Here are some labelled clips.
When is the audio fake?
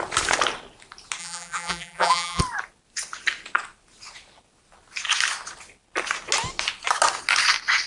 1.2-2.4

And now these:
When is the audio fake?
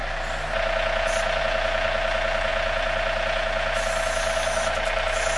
none